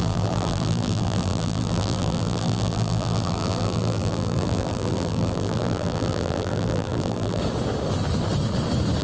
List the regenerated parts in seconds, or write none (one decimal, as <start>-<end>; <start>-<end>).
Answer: 0.0-7.4